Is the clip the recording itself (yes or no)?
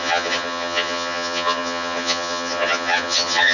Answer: no